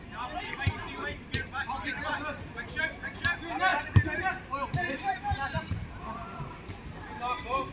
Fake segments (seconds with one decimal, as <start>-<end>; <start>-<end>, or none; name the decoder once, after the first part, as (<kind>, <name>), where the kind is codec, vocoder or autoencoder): 3.7-7.7 (vocoder, BigVGAN v2)

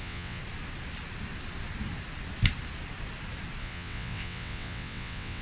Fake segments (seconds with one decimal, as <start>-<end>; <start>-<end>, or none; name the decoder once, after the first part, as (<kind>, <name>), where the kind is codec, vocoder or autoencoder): 0.0-0.4 (vocoder, WaveNeXt); 3.6-5.4

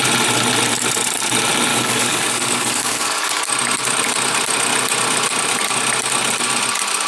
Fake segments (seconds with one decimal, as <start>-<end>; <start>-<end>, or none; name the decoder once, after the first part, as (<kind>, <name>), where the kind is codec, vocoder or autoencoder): 1.7-3.5 (codec, DAC)

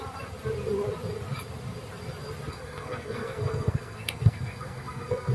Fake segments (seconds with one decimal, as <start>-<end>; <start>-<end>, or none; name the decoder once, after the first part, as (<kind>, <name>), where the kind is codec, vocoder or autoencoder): 2.5-5.3 (codec, SNAC)

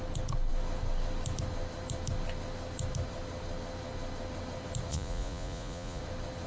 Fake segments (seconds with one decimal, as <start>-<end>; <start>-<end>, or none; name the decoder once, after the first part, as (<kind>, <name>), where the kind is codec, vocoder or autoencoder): 4.9-6.0 (vocoder, Vocos)